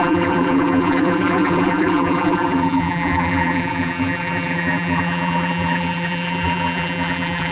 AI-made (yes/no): yes